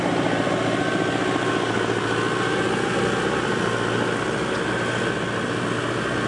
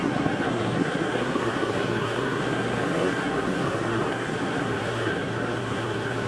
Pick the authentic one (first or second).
first